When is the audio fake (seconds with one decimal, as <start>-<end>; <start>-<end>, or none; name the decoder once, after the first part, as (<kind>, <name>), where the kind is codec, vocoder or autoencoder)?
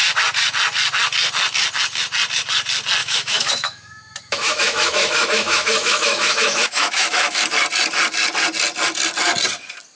3.0-7.4 (autoencoder, DAC-VAE)